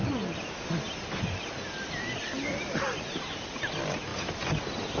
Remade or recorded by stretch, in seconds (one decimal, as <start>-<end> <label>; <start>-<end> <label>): 0.0-5.0 recorded